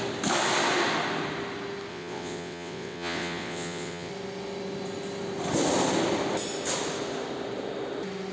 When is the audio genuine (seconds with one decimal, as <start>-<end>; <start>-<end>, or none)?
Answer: 0.0-1.9; 4.1-8.3